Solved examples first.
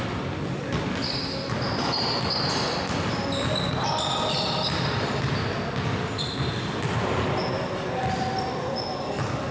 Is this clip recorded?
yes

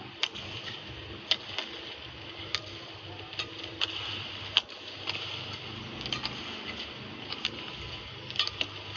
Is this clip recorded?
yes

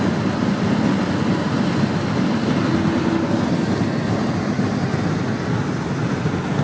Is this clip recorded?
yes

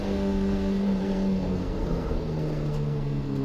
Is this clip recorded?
no